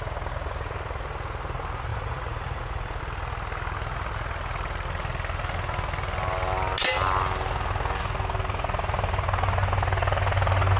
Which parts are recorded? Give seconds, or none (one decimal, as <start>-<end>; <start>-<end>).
0.0-1.9; 3.0-10.8